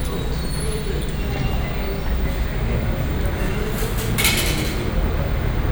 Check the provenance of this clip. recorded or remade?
recorded